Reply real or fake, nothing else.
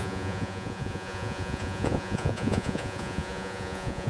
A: fake